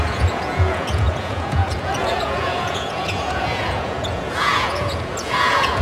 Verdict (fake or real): fake